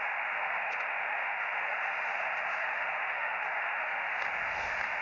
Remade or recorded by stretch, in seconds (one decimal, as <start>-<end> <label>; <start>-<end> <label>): 0.0-5.0 remade